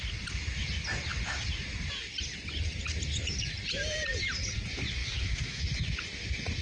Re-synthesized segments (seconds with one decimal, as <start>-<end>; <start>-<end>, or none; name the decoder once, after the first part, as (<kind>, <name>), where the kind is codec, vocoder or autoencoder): 5.0-5.6 (autoencoder, DAC-VAE)